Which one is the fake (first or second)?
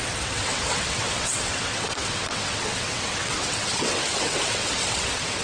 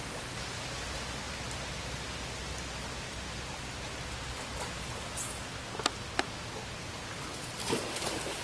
first